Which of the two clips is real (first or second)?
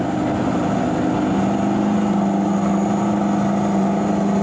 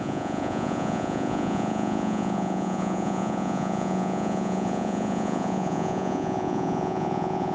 first